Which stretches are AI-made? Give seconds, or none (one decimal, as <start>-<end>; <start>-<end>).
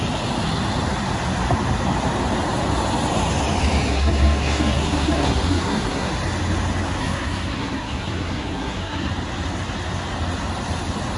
3.9-6.1; 7.0-9.1